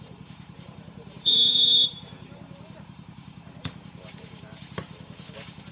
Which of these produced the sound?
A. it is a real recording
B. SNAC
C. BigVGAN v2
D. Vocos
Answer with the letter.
C